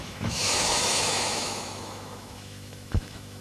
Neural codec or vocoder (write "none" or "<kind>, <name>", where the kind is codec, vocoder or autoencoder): autoencoder, DAC-VAE